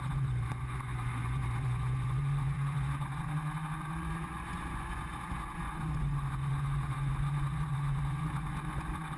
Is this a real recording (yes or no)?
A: no